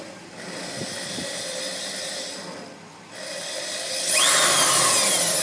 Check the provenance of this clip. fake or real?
real